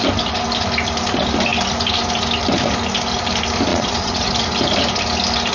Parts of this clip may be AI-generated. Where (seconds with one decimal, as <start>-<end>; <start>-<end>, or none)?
3.7-4.3